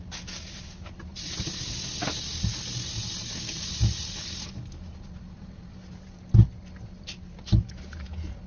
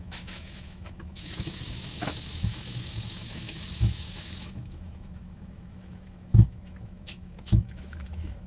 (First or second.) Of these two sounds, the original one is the first